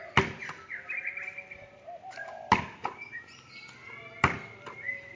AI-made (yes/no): no